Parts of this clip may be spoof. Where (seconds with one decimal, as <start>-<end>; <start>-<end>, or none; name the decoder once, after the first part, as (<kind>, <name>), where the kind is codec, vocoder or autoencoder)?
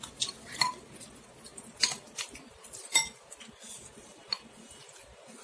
none